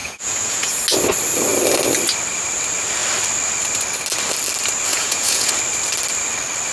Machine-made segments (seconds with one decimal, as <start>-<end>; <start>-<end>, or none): 0.0-0.8; 4.9-5.5